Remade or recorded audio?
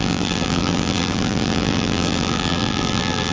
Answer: remade